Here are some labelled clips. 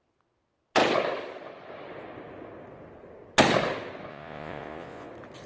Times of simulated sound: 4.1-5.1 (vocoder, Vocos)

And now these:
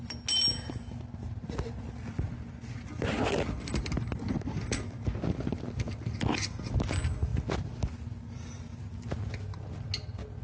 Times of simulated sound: none

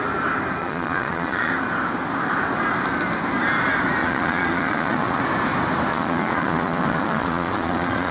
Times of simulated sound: 0.6-1.5 (vocoder, Vocos); 4.0-5.2; 5.9-8.1

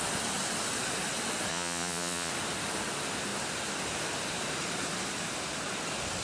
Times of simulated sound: 1.5-2.3 (vocoder, Vocos)

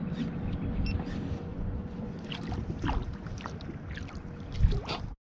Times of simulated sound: 1.5-2.3 (vocoder, Vocos)